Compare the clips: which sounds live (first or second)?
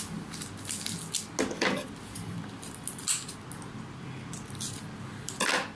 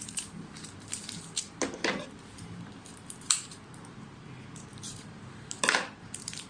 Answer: first